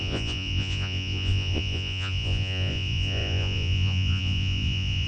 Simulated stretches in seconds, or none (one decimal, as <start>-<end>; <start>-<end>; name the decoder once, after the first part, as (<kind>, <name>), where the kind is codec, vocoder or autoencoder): 0.0-5.1 (vocoder, Vocos)